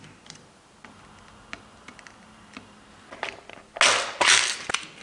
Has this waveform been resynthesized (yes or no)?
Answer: no